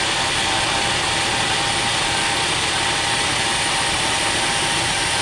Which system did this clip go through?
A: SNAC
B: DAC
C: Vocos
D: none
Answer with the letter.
D